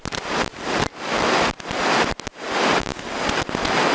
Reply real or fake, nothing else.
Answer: real